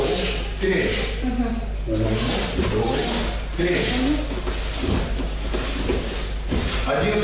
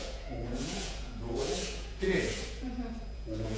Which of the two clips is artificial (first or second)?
second